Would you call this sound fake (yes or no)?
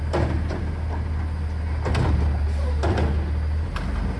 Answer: no